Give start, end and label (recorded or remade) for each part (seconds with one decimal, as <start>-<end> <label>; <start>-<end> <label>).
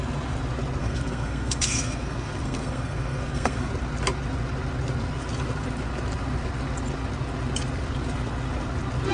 0.0-0.8 recorded; 0.8-3.7 remade; 3.7-9.1 recorded